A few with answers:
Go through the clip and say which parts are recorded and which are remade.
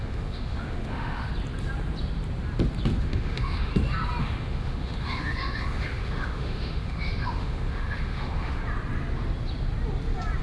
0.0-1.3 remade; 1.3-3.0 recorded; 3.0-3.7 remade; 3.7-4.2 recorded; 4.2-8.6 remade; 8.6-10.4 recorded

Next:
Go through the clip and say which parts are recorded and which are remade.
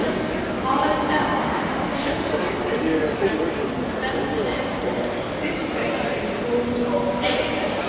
0.0-1.4 recorded; 1.4-2.2 remade; 2.2-7.9 recorded